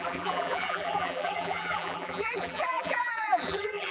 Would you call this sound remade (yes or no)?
yes